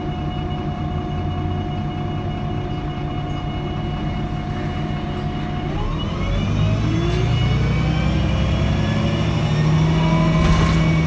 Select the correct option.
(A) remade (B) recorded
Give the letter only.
B